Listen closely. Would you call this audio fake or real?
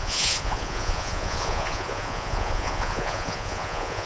fake